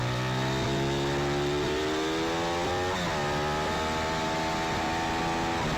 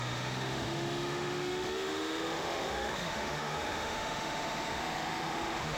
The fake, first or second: second